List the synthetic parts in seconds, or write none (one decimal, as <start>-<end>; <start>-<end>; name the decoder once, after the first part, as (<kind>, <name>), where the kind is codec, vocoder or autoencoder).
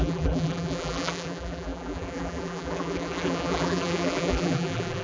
0.0-5.0 (vocoder, BigVGAN v2)